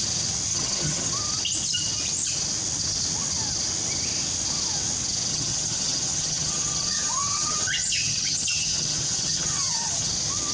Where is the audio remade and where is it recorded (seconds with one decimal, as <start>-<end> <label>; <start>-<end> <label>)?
0.0-0.5 recorded; 0.5-1.1 remade; 1.1-5.3 recorded; 5.3-10.1 remade; 10.1-10.5 recorded